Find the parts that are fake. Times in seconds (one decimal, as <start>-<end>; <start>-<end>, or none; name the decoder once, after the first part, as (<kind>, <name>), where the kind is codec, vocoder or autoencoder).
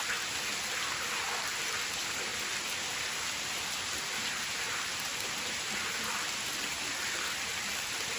none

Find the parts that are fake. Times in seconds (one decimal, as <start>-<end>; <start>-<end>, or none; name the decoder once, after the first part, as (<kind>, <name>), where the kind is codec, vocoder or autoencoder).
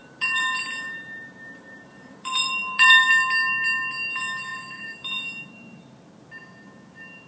0.0-3.1 (vocoder, BigVGAN v2); 4.5-5.9